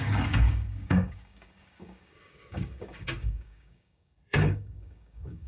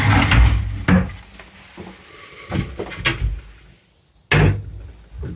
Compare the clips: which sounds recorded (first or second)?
second